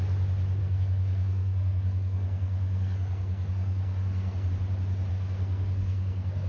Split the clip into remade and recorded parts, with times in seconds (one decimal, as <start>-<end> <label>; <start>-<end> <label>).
0.0-0.6 recorded; 0.6-4.5 remade; 4.5-5.1 recorded; 5.1-6.5 remade